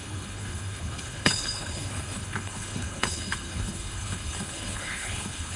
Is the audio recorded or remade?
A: remade